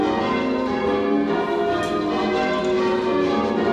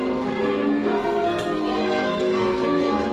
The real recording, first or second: first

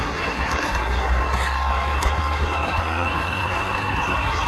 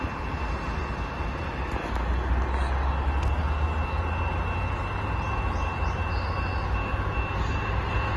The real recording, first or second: second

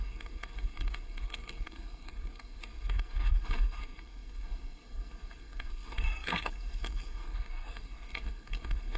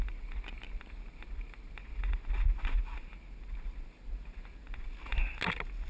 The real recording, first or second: second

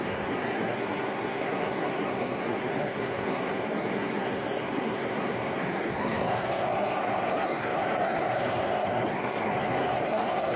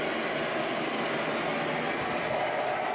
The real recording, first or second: second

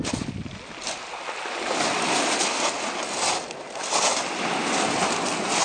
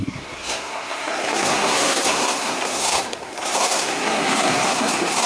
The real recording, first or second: first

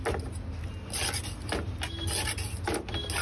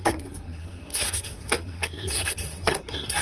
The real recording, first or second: first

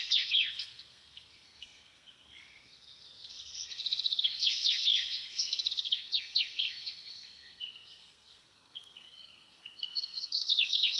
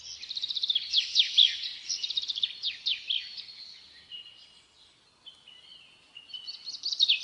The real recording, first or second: second